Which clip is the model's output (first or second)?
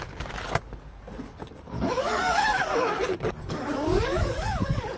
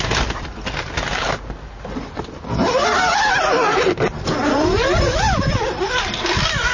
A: first